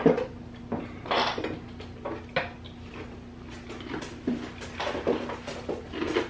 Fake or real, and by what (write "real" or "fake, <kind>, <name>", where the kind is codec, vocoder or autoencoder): real